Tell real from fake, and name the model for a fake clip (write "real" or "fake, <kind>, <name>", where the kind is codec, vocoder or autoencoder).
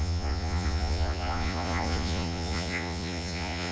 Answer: fake, vocoder, Vocos